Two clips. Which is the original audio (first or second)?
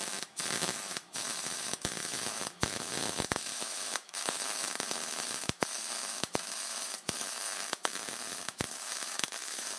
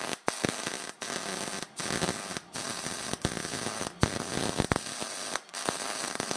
second